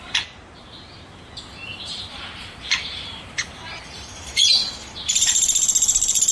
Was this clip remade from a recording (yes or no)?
yes